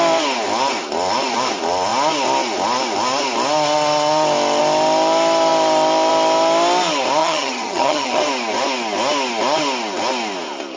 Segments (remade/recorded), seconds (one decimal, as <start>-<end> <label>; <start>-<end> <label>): 0.0-7.2 recorded; 7.2-8.2 remade; 8.2-10.8 recorded